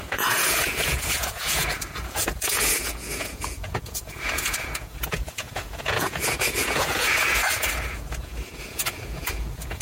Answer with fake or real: fake